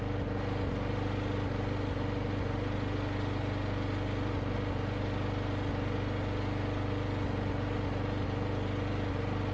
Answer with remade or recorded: recorded